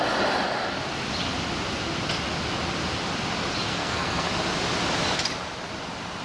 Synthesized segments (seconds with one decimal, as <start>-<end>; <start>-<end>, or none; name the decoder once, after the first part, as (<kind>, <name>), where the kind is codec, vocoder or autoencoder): 3.7-4.3 (codec, SNAC)